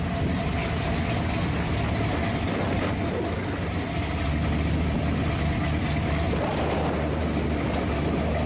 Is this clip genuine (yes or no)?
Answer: yes